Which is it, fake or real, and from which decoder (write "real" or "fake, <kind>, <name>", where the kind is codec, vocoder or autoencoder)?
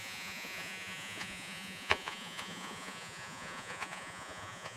fake, vocoder, Vocos